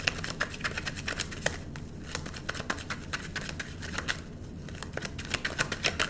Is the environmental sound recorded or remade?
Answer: recorded